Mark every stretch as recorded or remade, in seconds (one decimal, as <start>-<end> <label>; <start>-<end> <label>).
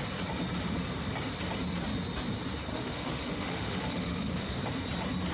0.0-2.7 recorded; 2.7-4.6 remade; 4.6-5.3 recorded